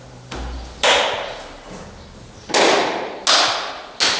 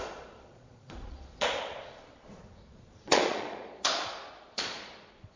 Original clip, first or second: first